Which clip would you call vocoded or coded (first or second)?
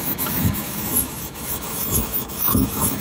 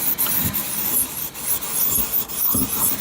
first